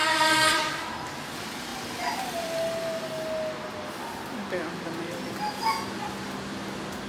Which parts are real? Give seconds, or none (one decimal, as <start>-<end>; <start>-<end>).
0.6-7.1